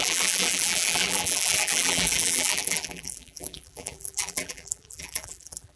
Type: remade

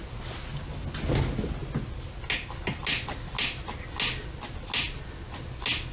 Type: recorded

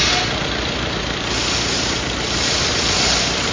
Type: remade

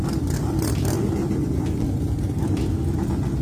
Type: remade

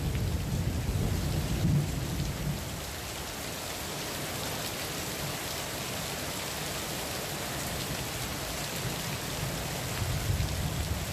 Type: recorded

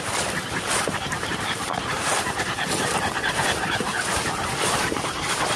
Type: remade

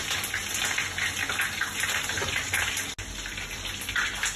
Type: recorded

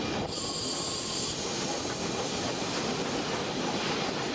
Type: recorded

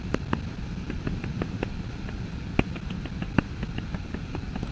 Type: recorded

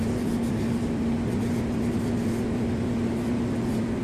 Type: recorded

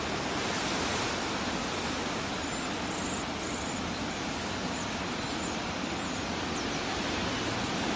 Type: recorded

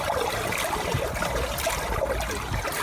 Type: recorded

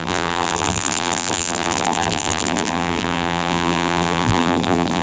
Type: remade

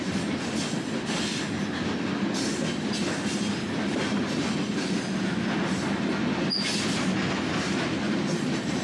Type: recorded